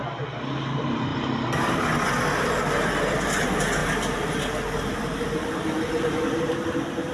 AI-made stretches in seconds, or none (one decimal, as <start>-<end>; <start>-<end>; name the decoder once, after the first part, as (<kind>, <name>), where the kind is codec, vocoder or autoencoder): none